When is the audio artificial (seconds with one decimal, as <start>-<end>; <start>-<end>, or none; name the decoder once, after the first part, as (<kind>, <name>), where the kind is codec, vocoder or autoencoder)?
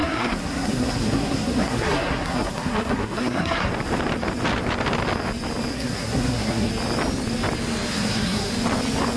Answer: 0.0-3.7 (codec, SNAC); 5.7-6.7; 7.9-8.5